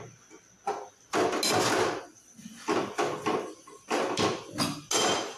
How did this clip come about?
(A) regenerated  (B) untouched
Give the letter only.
B